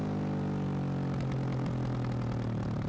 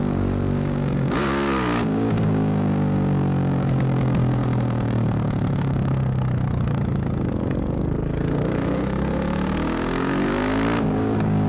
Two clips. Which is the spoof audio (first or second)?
second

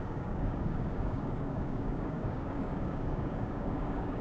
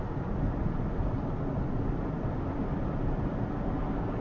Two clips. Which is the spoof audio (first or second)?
first